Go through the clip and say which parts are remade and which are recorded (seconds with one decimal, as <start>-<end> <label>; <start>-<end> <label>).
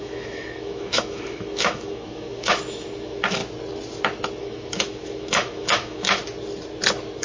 0.0-3.4 remade; 3.4-4.4 recorded; 4.4-6.2 remade; 6.2-7.2 recorded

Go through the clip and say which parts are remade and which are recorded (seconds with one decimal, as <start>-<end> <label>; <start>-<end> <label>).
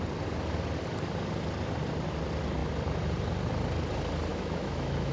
0.0-4.3 recorded; 4.3-5.1 remade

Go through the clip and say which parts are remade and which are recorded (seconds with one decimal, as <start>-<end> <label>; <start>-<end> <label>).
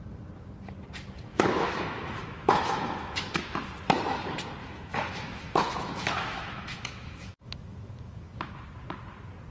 0.0-1.3 recorded; 1.3-3.7 remade; 3.7-4.6 recorded; 4.6-8.5 remade; 8.5-9.5 recorded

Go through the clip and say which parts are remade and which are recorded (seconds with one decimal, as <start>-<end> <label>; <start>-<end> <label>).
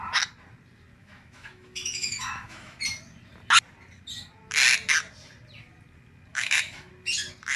0.0-1.0 recorded; 1.0-2.8 remade; 2.8-6.3 recorded; 6.3-6.9 remade; 6.9-7.6 recorded